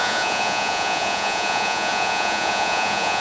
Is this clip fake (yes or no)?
yes